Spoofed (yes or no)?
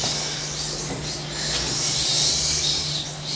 no